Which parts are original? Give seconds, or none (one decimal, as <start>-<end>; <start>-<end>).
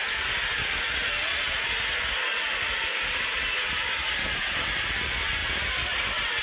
0.0-6.4